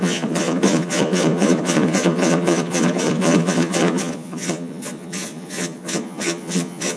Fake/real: fake